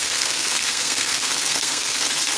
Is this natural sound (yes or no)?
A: no